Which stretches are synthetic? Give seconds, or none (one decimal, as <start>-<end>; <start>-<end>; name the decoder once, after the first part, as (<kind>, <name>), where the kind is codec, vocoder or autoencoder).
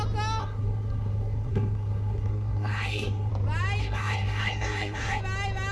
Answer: 0.4-3.3 (codec, SNAC); 3.8-5.2